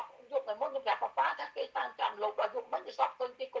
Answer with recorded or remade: recorded